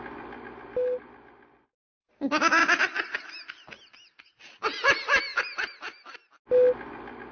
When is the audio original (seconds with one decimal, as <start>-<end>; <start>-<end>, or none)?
0.0-7.3